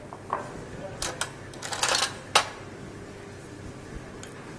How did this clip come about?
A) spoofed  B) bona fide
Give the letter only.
B